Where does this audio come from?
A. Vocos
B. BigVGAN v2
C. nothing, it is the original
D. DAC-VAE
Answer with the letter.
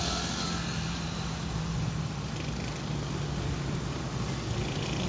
C